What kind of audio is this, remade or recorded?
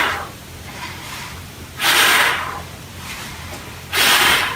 remade